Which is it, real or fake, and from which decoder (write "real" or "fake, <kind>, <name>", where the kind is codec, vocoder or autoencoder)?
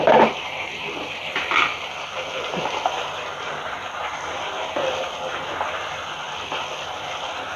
real